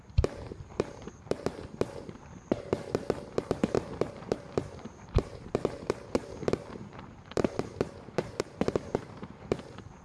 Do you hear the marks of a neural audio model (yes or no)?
yes